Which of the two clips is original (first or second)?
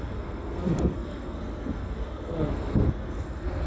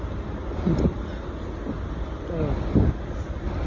second